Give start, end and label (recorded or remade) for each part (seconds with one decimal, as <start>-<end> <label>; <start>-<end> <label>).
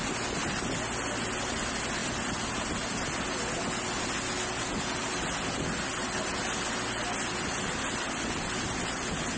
0.0-9.4 recorded